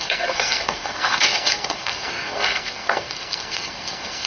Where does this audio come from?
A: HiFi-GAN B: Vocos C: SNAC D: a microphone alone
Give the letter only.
C